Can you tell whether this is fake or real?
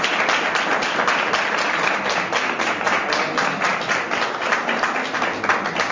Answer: real